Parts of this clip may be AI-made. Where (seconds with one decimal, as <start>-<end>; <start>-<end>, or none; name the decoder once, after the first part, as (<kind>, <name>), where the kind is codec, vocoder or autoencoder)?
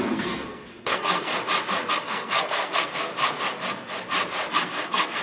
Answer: 0.0-1.3 (codec, SNAC); 1.9-3.1; 4.5-5.2